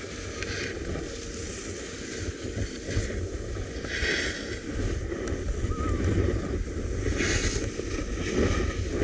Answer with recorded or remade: recorded